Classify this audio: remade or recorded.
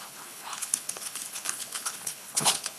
remade